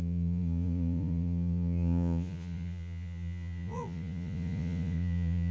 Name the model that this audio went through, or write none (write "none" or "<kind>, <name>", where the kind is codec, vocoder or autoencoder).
vocoder, Vocos